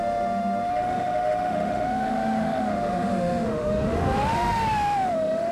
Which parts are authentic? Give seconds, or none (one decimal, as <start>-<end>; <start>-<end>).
none